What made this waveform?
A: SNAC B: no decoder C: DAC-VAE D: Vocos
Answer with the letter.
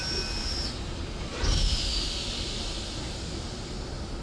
B